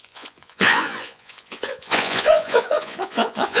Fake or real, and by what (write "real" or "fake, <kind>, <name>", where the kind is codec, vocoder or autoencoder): fake, vocoder, Vocos